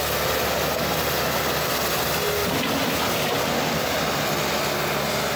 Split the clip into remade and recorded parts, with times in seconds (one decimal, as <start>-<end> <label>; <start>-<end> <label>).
0.0-5.4 recorded